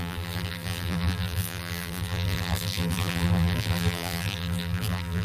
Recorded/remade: remade